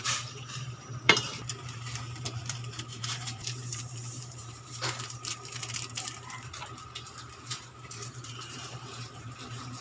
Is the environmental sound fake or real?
fake